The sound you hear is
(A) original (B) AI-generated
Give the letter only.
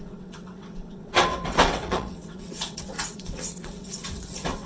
B